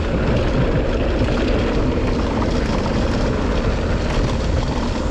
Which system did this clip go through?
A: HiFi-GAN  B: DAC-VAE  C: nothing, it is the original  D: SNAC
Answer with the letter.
C